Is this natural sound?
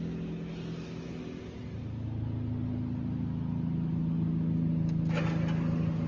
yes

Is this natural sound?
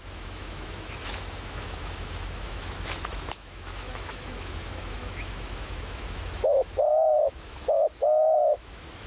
no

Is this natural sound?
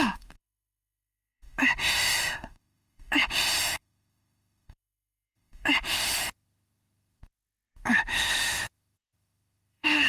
no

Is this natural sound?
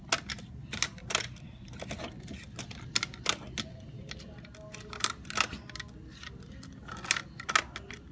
yes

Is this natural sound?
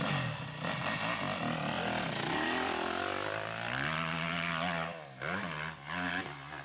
yes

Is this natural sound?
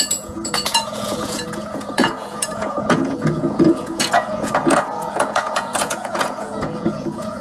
no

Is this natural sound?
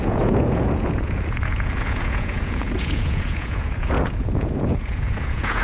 no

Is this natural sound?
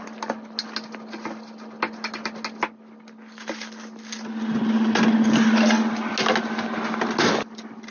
yes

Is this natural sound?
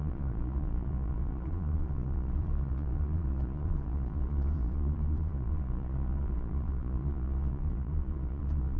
no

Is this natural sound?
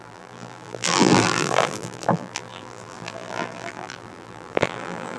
no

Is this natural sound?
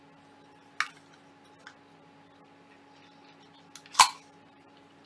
yes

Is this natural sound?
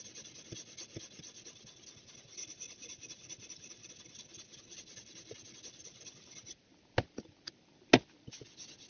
yes